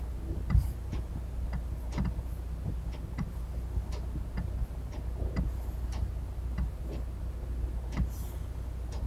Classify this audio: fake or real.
real